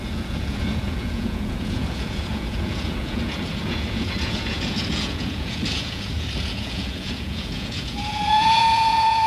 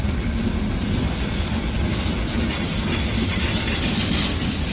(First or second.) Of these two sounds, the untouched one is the second